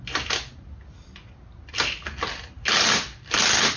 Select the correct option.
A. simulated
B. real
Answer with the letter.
B